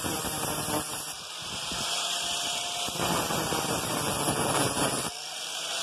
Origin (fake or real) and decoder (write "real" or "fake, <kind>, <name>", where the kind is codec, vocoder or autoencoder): real